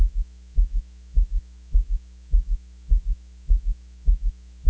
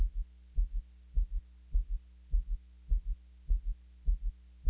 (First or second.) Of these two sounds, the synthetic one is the first